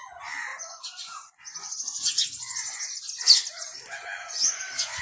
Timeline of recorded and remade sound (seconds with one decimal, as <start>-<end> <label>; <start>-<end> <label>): 0.0-0.5 recorded; 0.5-2.8 remade; 2.8-3.6 recorded; 3.6-4.6 remade; 4.6-5.0 recorded